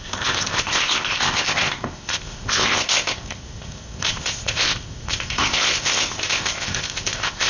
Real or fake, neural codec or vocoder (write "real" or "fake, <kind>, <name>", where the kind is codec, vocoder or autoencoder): fake, codec, ZipCodec